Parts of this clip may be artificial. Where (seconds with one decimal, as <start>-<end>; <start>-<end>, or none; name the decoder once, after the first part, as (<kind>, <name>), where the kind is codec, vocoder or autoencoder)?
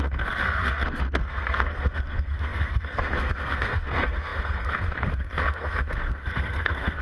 0.0-7.0 (codec, SNAC)